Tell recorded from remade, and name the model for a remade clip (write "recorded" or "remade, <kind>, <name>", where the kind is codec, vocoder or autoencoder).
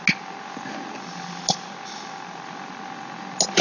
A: recorded